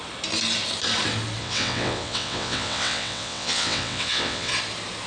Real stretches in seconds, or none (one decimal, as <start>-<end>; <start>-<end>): 0.0-1.4; 4.5-5.1